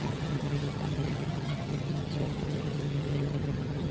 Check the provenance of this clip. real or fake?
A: fake